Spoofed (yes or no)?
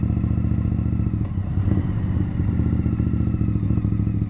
no